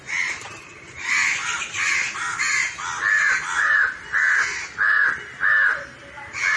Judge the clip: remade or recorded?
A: recorded